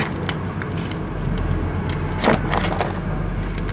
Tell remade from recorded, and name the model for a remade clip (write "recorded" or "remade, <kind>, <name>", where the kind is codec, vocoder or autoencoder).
recorded